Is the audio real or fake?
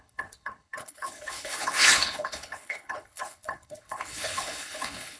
fake